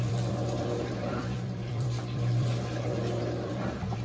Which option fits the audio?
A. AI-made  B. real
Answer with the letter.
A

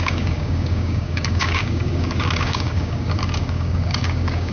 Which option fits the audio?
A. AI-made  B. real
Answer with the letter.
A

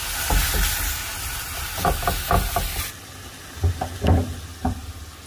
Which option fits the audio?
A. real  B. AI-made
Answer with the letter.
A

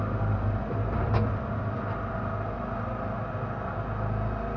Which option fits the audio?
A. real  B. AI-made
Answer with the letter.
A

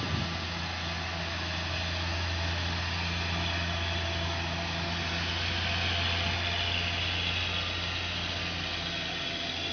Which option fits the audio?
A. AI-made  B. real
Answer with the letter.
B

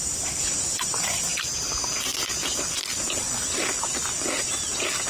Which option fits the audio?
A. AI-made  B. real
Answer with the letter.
B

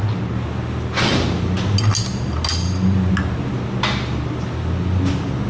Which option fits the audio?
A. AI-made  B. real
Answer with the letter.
B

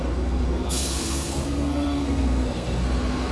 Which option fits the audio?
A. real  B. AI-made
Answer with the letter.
B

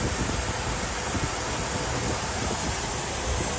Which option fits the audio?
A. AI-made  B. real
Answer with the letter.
B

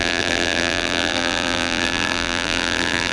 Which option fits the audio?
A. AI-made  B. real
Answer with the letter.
A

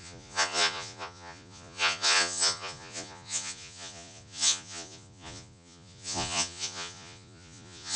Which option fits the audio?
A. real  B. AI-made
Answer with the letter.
B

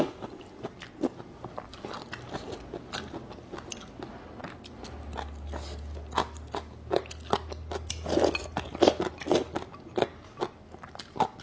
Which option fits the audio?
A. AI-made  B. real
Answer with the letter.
B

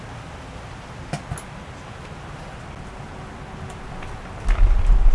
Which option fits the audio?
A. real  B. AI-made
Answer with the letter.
A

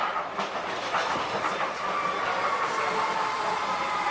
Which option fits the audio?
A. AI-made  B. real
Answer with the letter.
B